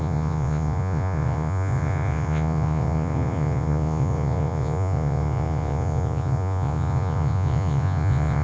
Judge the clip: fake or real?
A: fake